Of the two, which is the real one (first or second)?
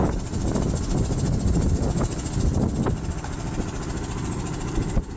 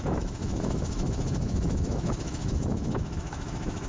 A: first